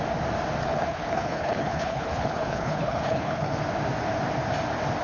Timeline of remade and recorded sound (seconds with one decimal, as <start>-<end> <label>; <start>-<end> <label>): 0.0-0.6 recorded; 0.6-3.6 remade; 3.6-5.0 recorded